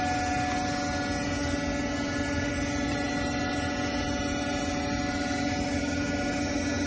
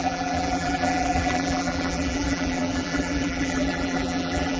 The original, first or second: first